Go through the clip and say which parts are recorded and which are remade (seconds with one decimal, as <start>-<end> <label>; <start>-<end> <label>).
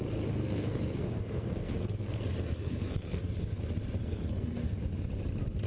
0.0-0.4 recorded; 0.4-3.2 remade; 3.2-4.0 recorded; 4.0-4.8 remade; 4.8-5.7 recorded